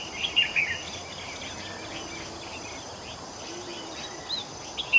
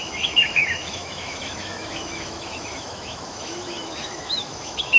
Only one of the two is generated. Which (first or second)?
second